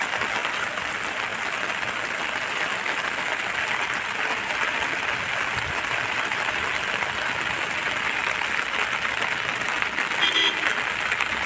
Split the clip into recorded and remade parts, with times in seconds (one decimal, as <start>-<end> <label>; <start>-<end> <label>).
0.0-11.5 recorded